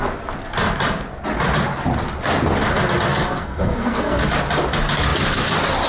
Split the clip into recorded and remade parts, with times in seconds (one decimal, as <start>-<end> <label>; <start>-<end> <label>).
0.0-3.1 recorded; 3.1-4.2 remade; 4.2-5.9 recorded